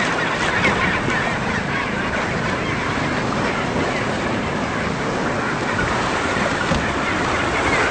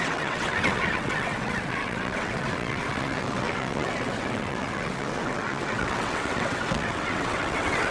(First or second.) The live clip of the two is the first